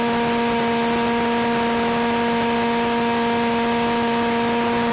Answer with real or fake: real